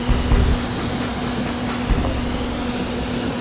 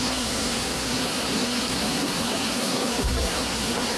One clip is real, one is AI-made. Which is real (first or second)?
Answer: first